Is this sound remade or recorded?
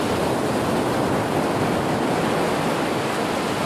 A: recorded